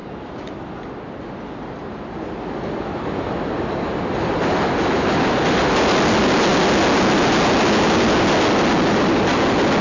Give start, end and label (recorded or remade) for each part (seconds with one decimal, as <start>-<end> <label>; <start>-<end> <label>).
0.0-9.8 recorded